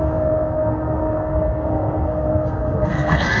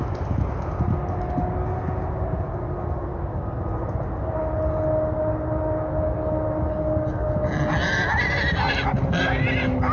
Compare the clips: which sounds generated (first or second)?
first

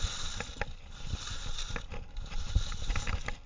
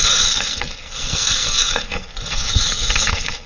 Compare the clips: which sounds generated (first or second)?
second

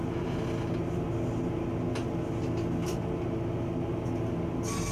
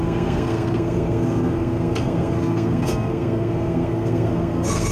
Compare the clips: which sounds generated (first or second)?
second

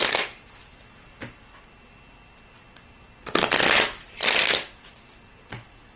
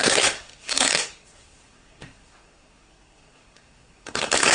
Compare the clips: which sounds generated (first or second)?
second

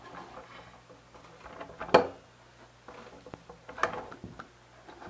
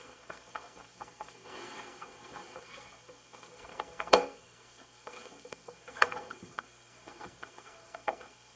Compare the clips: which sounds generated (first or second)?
second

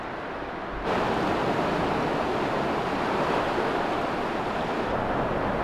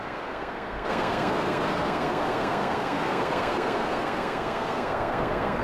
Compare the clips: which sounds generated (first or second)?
second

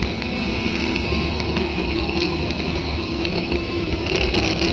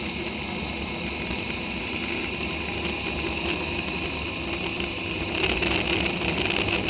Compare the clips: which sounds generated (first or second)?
first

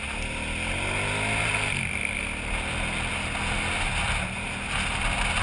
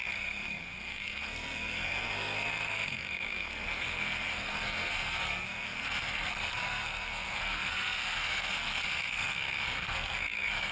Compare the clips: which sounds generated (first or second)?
second